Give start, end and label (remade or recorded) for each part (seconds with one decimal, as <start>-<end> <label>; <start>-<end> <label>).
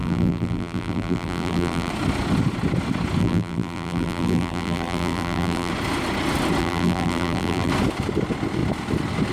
0.0-1.9 remade; 1.9-3.2 recorded; 3.2-5.7 remade; 5.7-6.6 recorded; 6.6-7.7 remade; 7.7-9.3 recorded